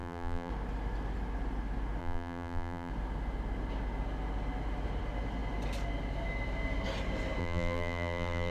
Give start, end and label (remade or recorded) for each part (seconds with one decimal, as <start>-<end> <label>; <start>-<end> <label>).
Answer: 0.0-0.5 remade; 0.5-2.0 recorded; 2.0-2.9 remade; 2.9-7.4 recorded; 7.4-8.5 remade